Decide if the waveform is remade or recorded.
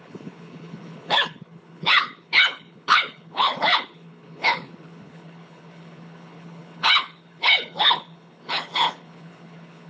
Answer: remade